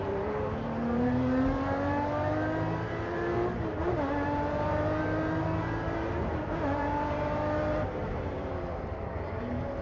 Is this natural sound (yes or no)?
no